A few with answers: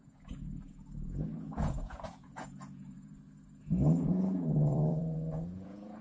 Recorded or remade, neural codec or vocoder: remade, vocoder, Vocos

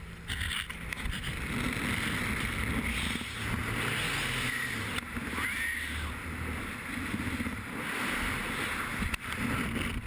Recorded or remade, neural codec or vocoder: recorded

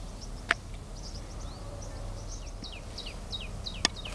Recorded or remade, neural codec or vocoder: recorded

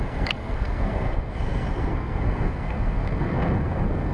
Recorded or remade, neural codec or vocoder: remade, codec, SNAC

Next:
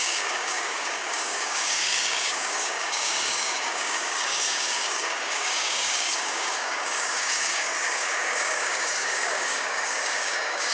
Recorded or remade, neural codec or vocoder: remade, codec, DAC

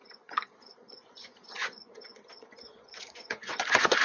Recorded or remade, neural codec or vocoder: remade, vocoder, Vocos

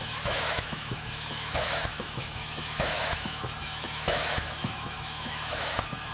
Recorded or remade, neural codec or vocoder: remade, autoencoder, DAC-VAE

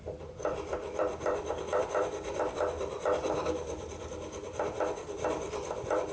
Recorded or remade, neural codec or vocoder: remade, vocoder, BigVGAN v2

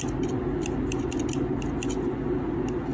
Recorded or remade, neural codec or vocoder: recorded